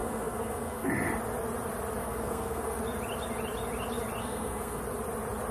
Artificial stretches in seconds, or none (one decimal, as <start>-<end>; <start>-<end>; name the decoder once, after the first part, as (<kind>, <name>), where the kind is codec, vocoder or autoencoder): 0.0-0.9 (codec, SNAC); 2.0-2.8; 4.2-4.8